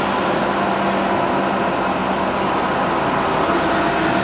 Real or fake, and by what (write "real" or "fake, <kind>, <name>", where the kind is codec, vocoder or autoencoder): real